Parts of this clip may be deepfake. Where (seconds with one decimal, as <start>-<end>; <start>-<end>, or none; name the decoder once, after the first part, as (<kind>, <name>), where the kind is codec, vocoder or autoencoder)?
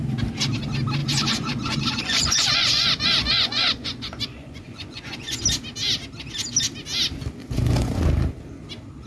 1.0-5.4 (vocoder, Vocos); 7.4-8.0